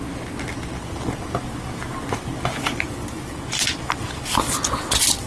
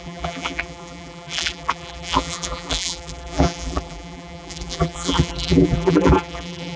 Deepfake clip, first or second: second